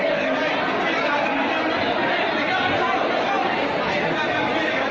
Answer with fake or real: real